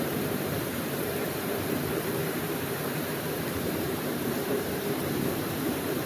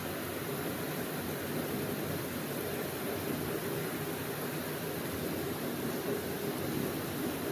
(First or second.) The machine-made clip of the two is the first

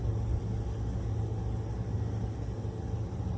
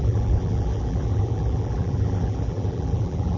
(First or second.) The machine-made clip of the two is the second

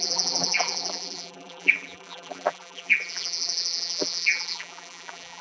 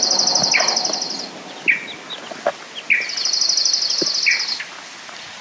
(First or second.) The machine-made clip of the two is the first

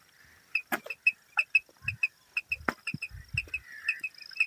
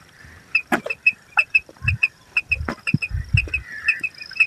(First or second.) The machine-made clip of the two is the second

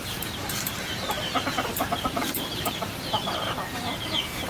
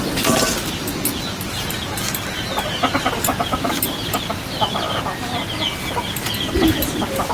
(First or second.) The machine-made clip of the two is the first